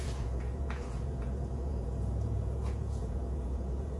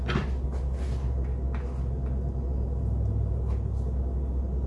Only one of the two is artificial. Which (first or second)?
first